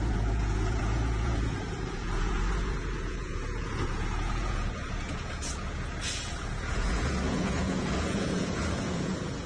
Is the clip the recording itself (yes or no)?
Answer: no